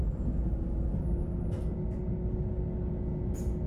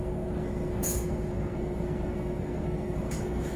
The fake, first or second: second